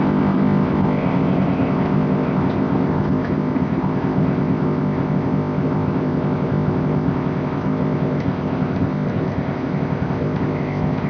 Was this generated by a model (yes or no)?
yes